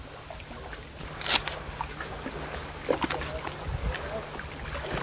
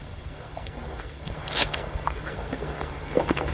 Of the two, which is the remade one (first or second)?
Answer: second